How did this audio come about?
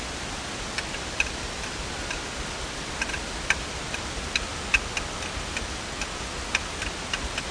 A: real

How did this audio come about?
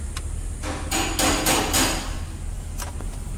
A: real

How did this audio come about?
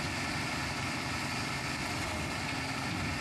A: real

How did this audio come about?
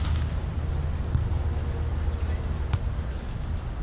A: real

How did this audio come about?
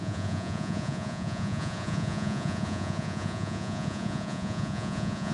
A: fake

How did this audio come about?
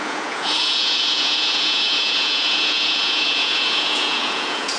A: fake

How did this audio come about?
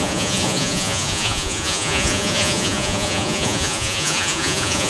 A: fake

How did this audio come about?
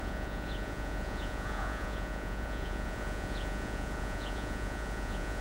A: fake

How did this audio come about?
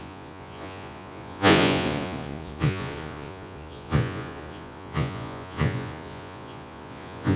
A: fake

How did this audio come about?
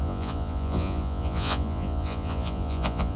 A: fake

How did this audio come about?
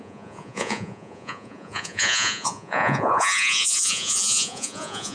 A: fake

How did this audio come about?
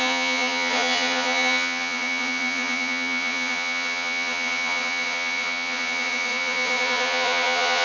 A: fake